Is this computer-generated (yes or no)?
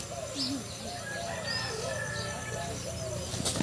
no